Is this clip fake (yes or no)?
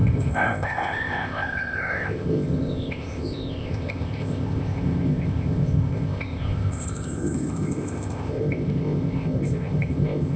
yes